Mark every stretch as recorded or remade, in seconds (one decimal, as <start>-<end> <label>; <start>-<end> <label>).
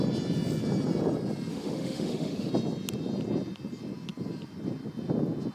0.0-1.5 recorded; 1.5-2.5 remade; 2.5-5.5 recorded